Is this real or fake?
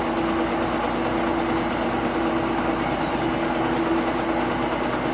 real